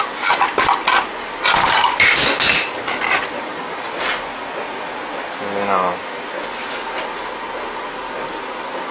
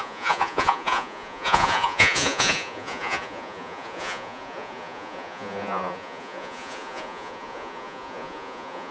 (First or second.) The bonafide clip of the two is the first